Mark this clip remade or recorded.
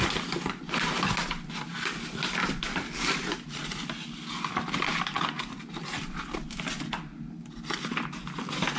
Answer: recorded